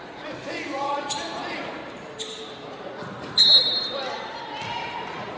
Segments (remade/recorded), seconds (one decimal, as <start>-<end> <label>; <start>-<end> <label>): 0.0-1.8 remade; 1.8-5.0 recorded; 5.0-5.4 remade